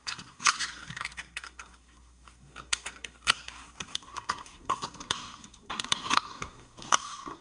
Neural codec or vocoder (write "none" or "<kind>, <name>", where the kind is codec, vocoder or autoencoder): codec, SNAC